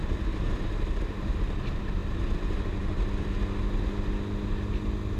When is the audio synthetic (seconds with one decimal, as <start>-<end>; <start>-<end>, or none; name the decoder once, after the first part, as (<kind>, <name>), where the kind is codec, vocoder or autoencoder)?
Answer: none